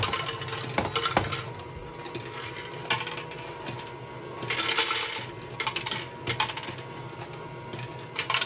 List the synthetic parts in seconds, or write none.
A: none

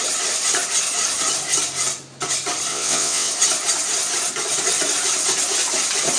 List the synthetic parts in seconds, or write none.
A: 2.7-3.3 (vocoder, WaveNeXt)